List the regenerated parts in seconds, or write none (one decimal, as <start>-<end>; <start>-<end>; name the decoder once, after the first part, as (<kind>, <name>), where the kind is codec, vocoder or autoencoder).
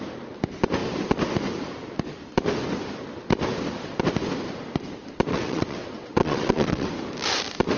5.3-6.9 (vocoder, WaveNeXt)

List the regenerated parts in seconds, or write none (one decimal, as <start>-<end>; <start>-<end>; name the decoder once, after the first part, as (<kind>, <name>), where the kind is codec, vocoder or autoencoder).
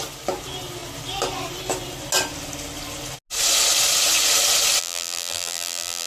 4.8-6.1 (vocoder, BigVGAN v2)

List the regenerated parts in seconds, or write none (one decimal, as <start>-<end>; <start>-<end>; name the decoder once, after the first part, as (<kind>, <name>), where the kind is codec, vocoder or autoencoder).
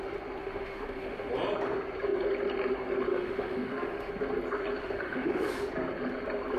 0.4-1.3 (autoencoder, DAC-VAE); 3.1-4.1; 4.8-5.5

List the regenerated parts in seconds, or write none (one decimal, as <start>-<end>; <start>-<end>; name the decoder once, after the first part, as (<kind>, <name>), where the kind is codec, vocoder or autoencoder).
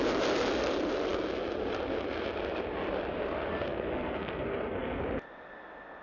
3.5-5.0 (codec, SNAC)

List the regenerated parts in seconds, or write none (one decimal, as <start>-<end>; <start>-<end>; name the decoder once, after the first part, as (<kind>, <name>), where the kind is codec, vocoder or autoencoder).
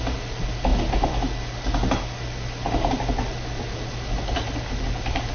none